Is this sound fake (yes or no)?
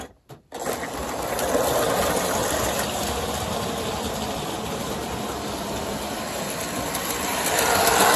no